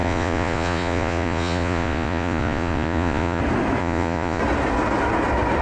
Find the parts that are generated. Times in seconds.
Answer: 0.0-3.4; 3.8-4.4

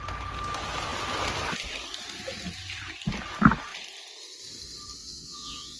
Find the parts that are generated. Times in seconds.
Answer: 5.0-5.8